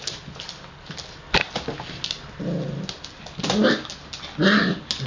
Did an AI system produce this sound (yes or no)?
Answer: no